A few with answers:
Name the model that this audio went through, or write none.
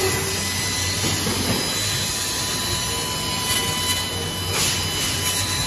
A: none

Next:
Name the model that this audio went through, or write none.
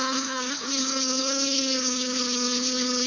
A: codec, HILCodec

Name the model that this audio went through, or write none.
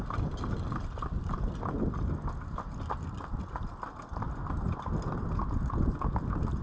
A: none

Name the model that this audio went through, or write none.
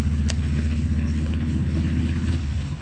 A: codec, HILCodec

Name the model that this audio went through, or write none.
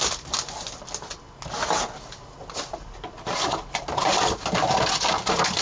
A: none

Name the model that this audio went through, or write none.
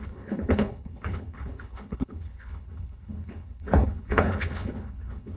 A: codec, HILCodec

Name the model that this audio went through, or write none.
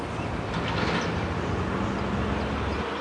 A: none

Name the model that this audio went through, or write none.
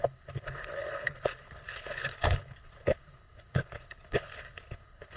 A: codec, HILCodec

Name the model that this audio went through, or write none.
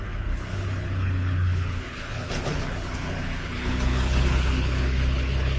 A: codec, HILCodec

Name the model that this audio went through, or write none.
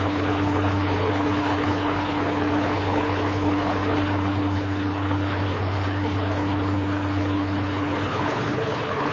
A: codec, HILCodec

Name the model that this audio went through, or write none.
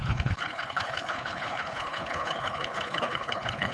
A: codec, HILCodec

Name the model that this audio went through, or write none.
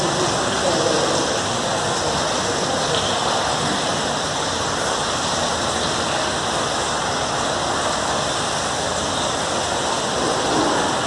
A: none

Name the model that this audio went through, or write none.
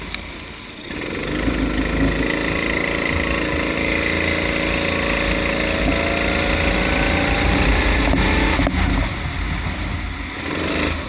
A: none